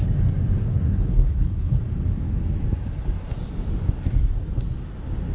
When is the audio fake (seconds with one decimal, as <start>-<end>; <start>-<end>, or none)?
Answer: 0.6-1.8